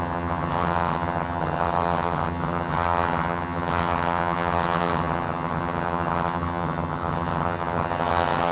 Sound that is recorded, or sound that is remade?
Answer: remade